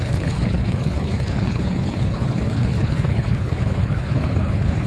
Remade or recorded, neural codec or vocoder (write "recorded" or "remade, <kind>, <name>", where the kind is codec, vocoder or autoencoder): remade, codec, HILCodec